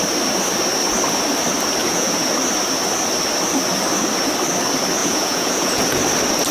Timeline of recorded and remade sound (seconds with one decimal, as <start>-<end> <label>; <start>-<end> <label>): 0.0-1.8 recorded; 1.8-2.3 remade; 2.3-5.0 recorded; 5.0-6.0 remade; 6.0-6.5 recorded